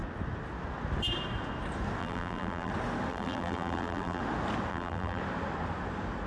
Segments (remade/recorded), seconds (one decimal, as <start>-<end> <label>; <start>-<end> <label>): 0.0-2.0 recorded; 2.0-2.7 remade; 2.7-3.1 recorded; 3.1-4.2 remade; 4.2-4.7 recorded; 4.7-5.2 remade; 5.2-6.3 recorded